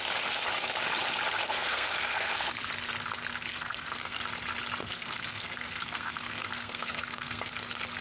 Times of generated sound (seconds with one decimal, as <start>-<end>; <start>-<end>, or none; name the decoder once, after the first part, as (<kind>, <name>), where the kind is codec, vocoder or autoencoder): 1.4-2.7 (codec, SNAC); 3.5-4.2; 4.8-7.4